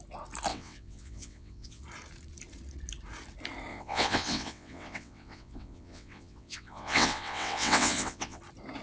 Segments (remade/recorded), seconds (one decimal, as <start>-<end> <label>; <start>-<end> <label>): 0.0-0.5 recorded; 0.5-1.8 remade; 1.8-3.7 recorded; 3.7-8.4 remade; 8.4-8.8 recorded